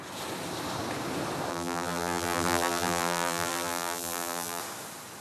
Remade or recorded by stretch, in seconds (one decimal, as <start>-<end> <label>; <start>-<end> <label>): 0.0-1.5 recorded; 1.5-4.6 remade; 4.6-5.2 recorded